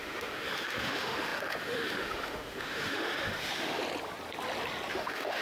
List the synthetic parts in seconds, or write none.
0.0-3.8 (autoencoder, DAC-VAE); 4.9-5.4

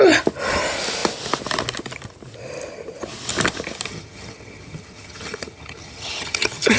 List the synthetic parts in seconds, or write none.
3.9-6.8 (vocoder, HiFi-GAN)

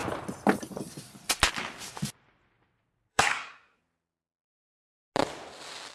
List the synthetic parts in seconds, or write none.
3.1-3.8 (codec, SNAC)

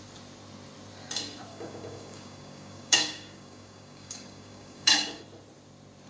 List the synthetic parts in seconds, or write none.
1.5-5.2 (codec, DAC)

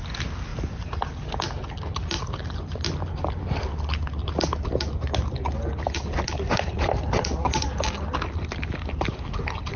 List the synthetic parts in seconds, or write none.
none

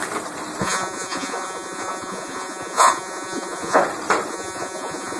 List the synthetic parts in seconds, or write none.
0.6-3.8 (vocoder, Vocos); 4.3-5.2

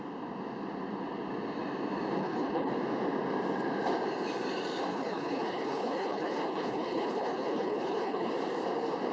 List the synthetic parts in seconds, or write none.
2.2-2.7 (codec, HILCodec); 4.9-8.3

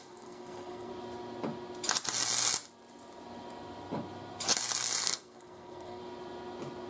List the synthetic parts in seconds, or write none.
0.0-0.9 (codec, SNAC); 5.0-6.0